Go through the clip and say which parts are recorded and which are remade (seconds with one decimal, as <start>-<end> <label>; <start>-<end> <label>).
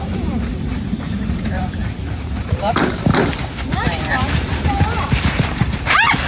0.0-3.1 remade; 3.1-3.7 recorded; 3.7-6.3 remade